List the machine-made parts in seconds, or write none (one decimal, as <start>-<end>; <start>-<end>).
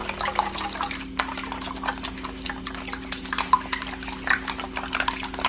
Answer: none